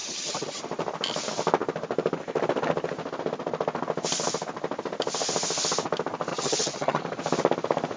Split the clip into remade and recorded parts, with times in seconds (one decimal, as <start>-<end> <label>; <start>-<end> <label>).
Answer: 0.0-0.6 remade; 0.6-6.3 recorded; 6.3-7.0 remade; 7.0-8.0 recorded